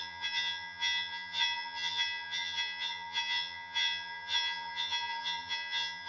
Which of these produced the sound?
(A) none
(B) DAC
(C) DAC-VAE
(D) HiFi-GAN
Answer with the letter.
D